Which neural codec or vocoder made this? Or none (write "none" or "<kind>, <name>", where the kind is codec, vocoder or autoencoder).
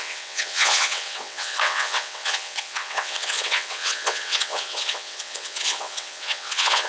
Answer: vocoder, WaveNeXt